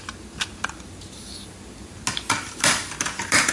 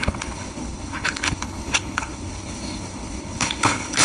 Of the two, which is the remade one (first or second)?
second